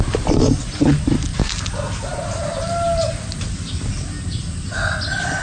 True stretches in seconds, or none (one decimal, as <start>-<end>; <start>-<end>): 0.0-5.4